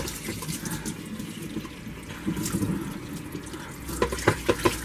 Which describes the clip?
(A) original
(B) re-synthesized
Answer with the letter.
A